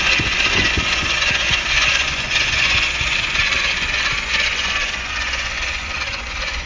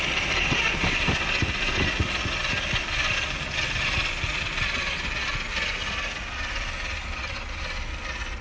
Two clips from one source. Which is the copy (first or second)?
first